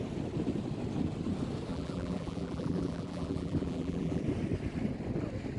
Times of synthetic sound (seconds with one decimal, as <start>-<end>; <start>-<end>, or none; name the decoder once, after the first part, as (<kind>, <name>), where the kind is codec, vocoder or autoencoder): 1.7-4.2 (vocoder, BigVGAN v2)